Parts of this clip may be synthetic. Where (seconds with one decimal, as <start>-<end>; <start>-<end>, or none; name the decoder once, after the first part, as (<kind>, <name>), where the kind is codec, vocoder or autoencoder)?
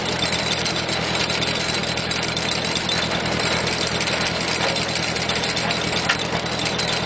none